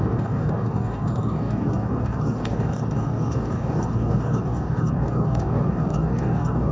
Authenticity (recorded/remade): remade